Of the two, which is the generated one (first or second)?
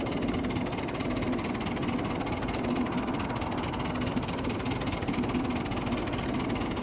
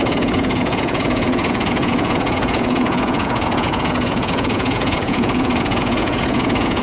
second